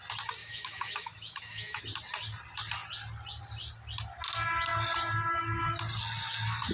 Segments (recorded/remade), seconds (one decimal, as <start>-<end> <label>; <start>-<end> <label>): 0.0-0.4 recorded; 0.4-1.8 remade; 1.8-6.7 recorded